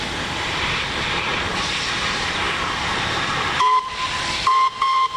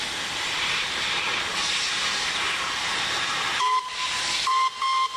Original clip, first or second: second